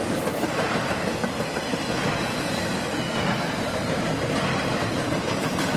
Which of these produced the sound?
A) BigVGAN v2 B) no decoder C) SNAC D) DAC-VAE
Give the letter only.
B